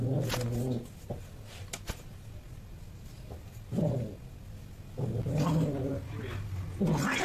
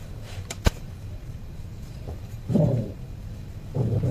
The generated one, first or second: second